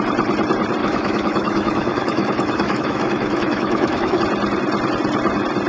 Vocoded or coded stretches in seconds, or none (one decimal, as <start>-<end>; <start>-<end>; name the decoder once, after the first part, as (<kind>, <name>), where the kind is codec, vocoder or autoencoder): 0.8-4.2 (autoencoder, DAC-VAE)